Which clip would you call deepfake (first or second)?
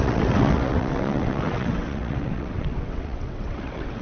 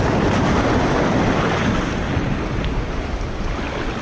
first